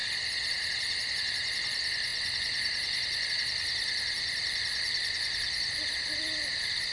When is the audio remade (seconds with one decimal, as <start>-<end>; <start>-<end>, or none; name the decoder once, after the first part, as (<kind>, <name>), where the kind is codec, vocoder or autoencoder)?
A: none